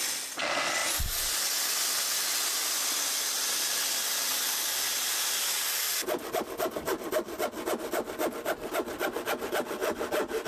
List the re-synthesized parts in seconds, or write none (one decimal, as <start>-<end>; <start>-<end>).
9.8-10.5